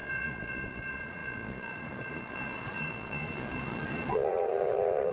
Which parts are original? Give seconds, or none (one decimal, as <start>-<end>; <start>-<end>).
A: none